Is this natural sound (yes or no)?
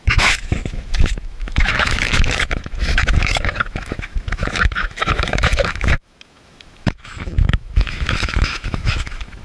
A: no